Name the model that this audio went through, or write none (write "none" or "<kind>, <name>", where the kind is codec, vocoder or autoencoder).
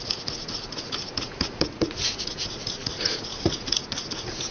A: vocoder, Vocos